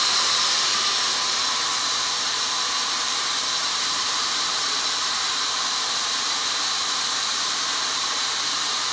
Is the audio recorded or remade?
remade